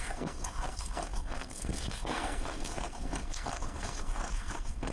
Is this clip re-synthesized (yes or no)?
yes